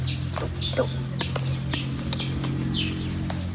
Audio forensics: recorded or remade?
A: recorded